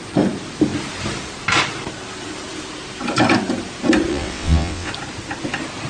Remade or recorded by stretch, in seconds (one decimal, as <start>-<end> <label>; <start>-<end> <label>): 0.0-4.1 recorded; 4.1-4.9 remade; 4.9-5.9 recorded

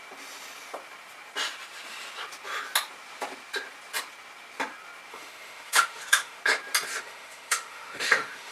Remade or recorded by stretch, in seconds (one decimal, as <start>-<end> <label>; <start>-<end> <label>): 0.0-5.1 recorded; 5.1-6.4 remade; 6.4-7.0 recorded; 7.0-8.5 remade